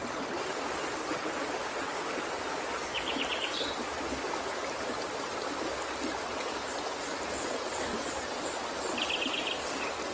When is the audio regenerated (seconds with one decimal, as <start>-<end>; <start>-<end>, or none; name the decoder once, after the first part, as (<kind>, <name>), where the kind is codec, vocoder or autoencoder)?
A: none